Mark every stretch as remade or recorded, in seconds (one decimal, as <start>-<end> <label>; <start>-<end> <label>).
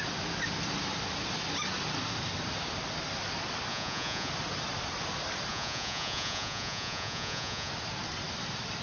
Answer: 0.0-3.7 recorded; 3.7-4.3 remade; 4.3-5.5 recorded; 5.5-7.7 remade; 7.7-8.8 recorded